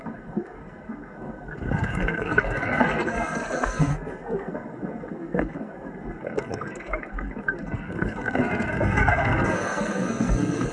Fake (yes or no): yes